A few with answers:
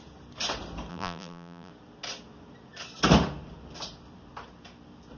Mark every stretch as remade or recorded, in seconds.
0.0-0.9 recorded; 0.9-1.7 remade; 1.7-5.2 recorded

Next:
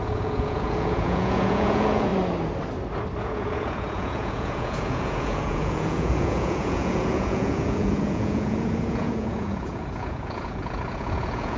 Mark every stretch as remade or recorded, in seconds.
0.0-2.1 remade; 2.1-3.2 recorded; 3.2-11.6 remade

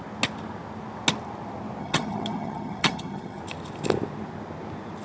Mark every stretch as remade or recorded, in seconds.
0.0-1.8 recorded; 1.8-3.4 remade; 3.4-5.0 recorded

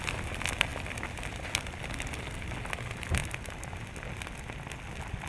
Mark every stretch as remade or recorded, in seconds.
0.0-3.2 recorded; 3.2-3.7 remade; 3.7-5.3 recorded

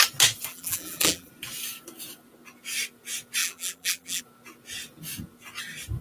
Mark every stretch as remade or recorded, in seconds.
0.0-0.5 recorded; 0.5-1.3 remade; 1.3-3.4 recorded; 3.4-4.2 remade; 4.2-6.0 recorded

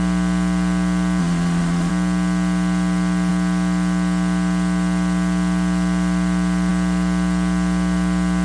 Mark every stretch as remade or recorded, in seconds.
0.0-1.2 recorded; 1.2-1.9 remade; 1.9-8.4 recorded

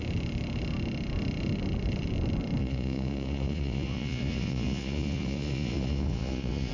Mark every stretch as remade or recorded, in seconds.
0.0-2.6 recorded; 2.6-6.7 remade

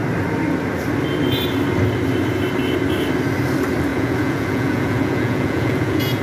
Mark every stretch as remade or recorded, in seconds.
0.0-3.9 recorded; 3.9-6.2 remade